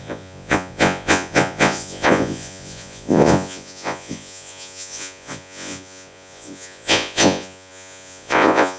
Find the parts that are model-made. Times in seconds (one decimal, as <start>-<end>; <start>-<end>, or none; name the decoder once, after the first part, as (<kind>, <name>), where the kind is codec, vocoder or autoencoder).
0.0-8.8 (vocoder, Vocos)